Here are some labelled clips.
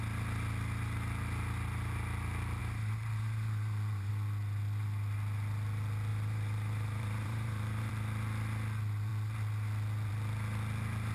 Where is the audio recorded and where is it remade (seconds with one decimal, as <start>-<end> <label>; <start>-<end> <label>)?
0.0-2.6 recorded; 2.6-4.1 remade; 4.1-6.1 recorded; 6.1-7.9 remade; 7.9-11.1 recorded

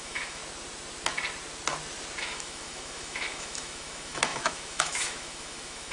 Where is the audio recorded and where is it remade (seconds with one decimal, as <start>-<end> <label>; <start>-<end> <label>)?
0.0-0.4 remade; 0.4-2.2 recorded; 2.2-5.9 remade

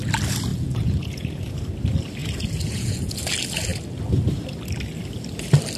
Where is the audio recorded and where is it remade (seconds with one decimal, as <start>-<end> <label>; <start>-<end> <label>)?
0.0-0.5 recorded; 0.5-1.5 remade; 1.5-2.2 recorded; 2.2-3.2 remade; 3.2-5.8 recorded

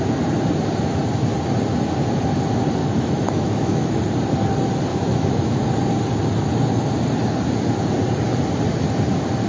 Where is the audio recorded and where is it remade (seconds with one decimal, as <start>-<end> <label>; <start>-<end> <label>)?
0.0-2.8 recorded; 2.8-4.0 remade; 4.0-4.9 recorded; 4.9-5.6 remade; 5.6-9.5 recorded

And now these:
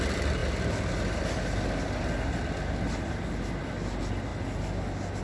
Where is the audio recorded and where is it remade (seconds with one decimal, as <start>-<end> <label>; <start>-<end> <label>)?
0.0-5.2 recorded